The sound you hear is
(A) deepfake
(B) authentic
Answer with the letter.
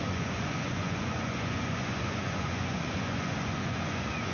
A